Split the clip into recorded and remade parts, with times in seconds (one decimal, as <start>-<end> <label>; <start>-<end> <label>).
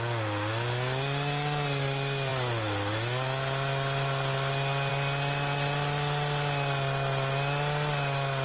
0.0-8.4 recorded